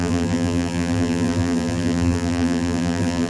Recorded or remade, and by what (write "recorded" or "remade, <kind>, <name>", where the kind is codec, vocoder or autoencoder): remade, vocoder, BigVGAN v2